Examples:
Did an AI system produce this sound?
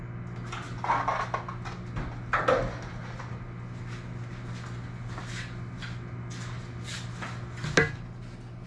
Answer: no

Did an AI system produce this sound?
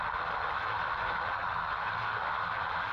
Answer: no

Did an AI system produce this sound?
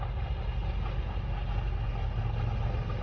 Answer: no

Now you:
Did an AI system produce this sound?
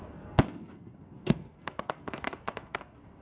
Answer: yes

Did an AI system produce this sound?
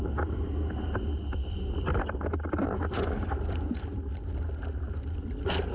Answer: no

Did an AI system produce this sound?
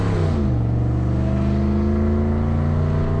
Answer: no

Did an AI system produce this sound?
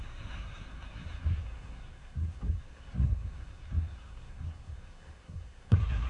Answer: yes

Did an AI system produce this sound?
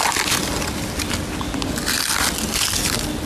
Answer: no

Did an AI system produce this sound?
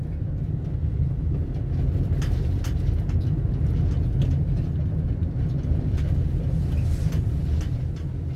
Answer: no